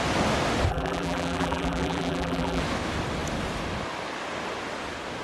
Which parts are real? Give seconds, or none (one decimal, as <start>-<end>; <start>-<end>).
0.0-0.7; 2.6-5.2